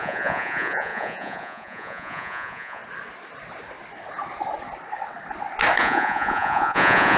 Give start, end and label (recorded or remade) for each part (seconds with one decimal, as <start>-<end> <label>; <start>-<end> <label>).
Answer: 0.0-2.8 remade; 2.8-5.8 recorded; 5.8-7.2 remade